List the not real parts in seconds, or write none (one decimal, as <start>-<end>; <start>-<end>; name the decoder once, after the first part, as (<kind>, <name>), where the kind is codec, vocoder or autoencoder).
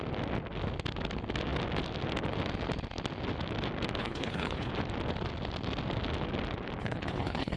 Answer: 4.0-4.7 (codec, HILCodec); 6.8-7.6